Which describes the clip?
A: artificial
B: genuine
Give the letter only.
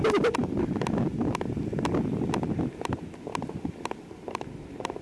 B